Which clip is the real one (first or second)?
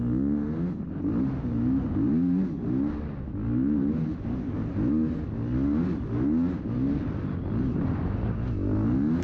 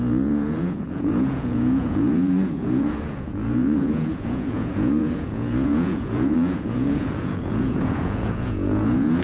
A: first